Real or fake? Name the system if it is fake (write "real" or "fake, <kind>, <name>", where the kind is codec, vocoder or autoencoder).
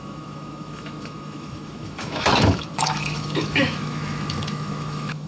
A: fake, autoencoder, DAC-VAE